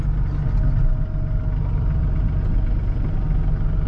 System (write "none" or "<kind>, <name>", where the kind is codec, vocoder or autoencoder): none